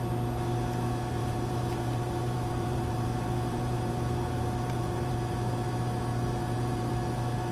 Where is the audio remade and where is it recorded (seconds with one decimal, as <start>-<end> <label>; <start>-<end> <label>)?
0.0-1.2 recorded; 1.2-5.1 remade; 5.1-6.1 recorded; 6.1-6.9 remade; 6.9-7.5 recorded